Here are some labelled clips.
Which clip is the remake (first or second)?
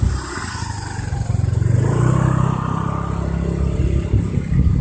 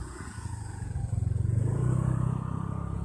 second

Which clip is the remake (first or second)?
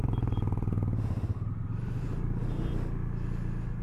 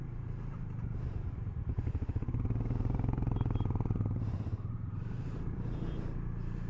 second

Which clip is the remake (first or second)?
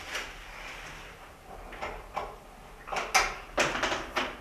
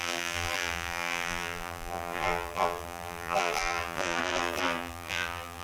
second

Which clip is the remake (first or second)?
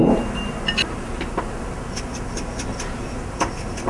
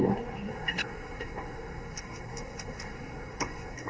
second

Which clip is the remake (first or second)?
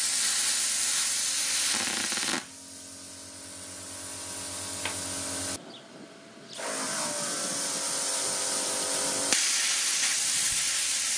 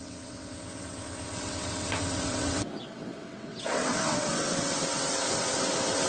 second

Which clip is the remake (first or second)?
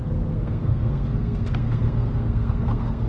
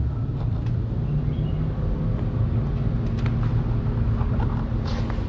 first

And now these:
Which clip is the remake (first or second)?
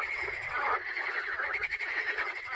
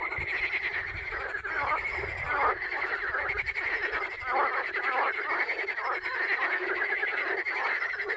first